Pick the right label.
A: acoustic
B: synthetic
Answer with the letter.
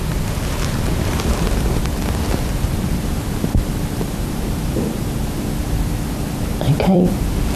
B